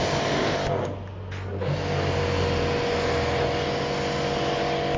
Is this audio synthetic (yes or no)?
no